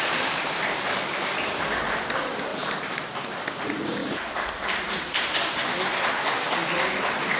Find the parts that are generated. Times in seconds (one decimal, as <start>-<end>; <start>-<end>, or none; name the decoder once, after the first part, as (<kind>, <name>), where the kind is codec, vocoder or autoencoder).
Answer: 4.0-5.2 (vocoder, BigVGAN v2); 6.6-7.4